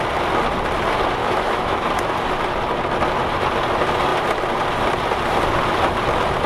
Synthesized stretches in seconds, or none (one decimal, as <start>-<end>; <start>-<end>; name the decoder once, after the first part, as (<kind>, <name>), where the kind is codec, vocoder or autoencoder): 1.2-1.9 (autoencoder, DAC-VAE)